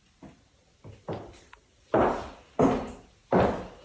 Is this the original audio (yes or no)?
yes